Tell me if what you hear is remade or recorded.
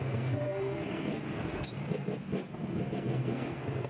remade